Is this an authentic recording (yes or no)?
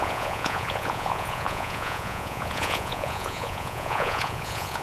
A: no